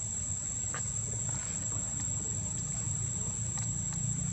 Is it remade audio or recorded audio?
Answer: recorded